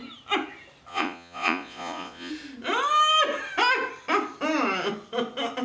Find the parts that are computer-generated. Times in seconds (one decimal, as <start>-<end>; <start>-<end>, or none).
0.9-2.3